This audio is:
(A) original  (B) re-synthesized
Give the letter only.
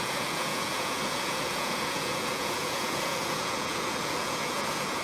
B